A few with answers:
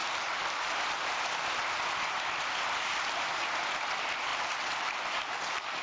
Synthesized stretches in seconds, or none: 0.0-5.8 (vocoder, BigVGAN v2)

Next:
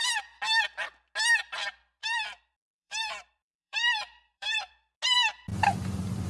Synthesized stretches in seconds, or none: 2.0-4.7 (vocoder, BigVGAN v2); 5.5-6.3